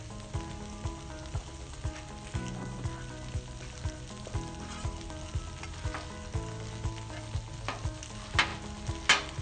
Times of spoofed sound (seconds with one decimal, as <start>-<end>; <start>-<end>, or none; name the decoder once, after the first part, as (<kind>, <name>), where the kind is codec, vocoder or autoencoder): none